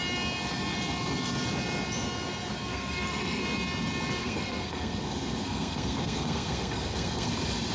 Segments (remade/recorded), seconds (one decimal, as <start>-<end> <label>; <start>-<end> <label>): 0.0-2.7 recorded; 2.7-3.4 remade; 3.4-4.2 recorded; 4.2-7.3 remade; 7.3-7.7 recorded